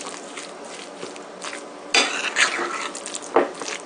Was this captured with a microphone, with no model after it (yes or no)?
yes